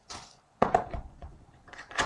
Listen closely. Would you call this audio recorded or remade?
remade